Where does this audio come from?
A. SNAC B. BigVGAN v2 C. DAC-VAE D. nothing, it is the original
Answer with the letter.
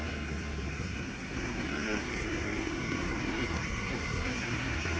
A